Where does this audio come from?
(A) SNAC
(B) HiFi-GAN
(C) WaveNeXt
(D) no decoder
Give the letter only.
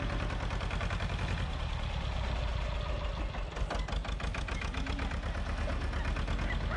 D